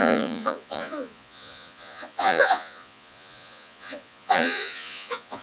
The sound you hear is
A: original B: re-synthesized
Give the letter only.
B